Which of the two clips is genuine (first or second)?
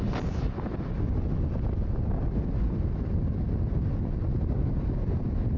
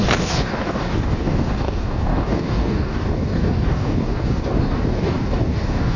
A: first